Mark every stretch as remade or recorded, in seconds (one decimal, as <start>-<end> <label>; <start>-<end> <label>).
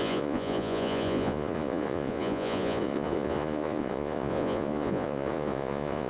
0.0-6.1 remade